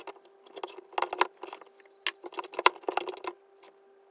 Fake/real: real